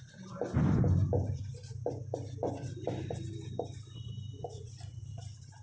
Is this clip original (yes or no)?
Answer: yes